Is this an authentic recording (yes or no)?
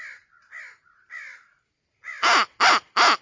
yes